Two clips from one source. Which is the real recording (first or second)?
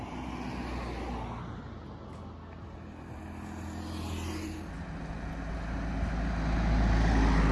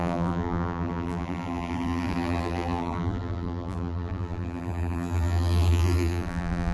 first